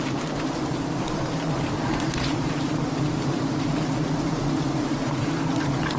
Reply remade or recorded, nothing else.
remade